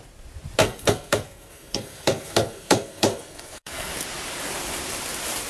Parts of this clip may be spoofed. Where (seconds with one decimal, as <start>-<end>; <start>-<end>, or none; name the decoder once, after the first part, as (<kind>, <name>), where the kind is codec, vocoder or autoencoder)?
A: 0.6-3.9 (codec, SNAC)